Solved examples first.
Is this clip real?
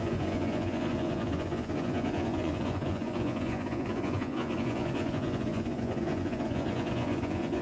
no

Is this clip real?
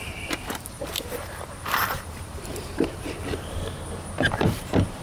no